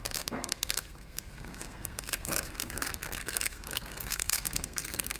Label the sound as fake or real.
fake